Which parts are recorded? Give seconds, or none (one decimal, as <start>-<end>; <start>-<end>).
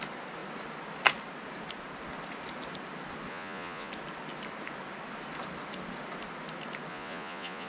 0.0-3.3; 3.9-6.9